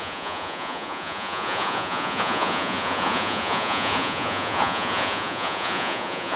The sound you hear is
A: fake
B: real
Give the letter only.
A